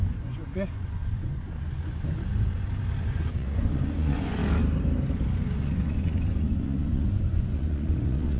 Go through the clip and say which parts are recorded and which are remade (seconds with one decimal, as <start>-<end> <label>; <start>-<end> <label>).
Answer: 0.0-2.1 remade; 2.1-3.0 recorded; 3.0-4.4 remade; 4.4-5.6 recorded; 5.6-8.4 remade